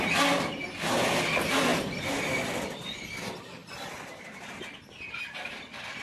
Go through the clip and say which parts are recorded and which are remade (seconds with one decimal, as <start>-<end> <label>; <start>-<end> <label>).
0.0-6.0 recorded